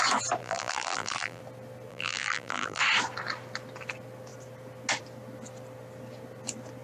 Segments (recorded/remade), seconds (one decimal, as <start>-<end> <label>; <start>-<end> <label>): 0.0-0.4 recorded; 0.4-1.4 remade; 1.4-1.9 recorded; 1.9-2.8 remade; 2.8-6.8 recorded